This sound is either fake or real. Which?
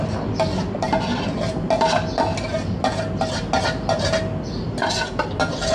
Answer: real